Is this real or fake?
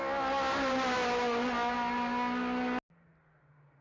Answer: real